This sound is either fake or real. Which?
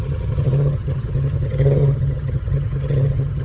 fake